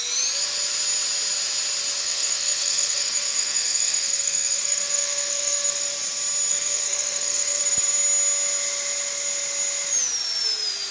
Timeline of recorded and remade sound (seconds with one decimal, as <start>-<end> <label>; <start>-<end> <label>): 0.0-2.0 recorded; 2.0-5.8 remade; 5.8-6.5 recorded; 6.5-7.6 remade; 7.6-10.9 recorded